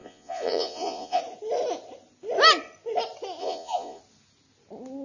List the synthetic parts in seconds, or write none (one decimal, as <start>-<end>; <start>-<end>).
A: 0.0-1.2; 3.4-4.0